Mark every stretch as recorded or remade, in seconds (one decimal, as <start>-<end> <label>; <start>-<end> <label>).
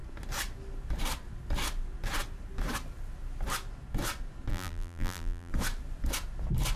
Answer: 0.0-4.5 recorded; 4.5-5.5 remade; 5.5-6.8 recorded